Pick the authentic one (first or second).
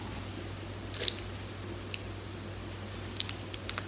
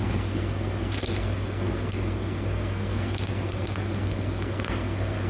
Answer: first